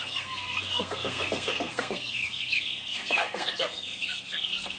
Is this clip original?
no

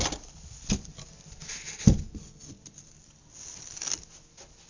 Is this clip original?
yes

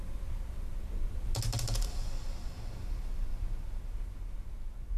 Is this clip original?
yes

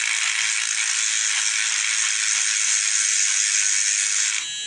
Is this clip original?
yes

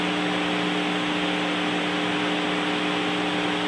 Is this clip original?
yes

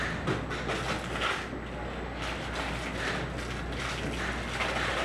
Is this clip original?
yes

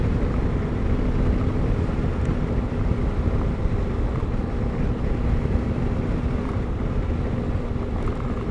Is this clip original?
yes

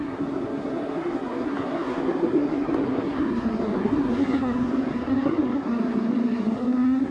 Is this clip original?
no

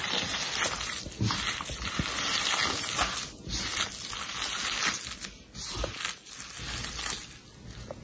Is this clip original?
yes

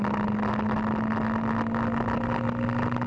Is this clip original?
yes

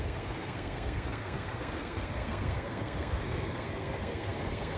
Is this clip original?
no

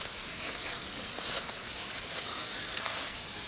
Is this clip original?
no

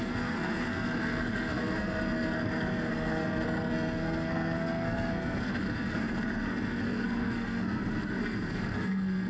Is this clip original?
no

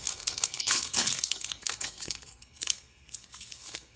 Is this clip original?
no